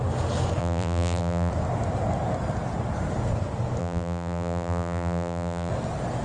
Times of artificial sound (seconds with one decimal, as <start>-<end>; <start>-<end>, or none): 0.6-1.5; 3.8-5.7